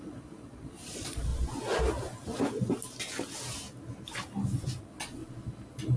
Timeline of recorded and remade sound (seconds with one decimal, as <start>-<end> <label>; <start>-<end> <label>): 0.0-1.3 remade; 1.3-4.8 recorded; 4.8-5.2 remade; 5.2-6.0 recorded